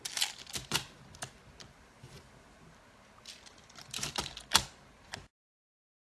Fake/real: real